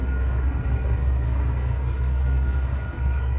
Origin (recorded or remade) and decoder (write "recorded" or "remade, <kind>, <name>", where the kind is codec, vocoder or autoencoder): remade, codec, SNAC